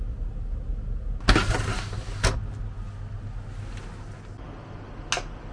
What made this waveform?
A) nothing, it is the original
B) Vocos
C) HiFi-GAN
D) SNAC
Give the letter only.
A